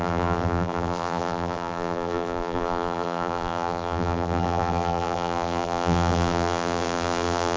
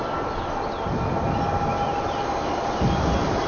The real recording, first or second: second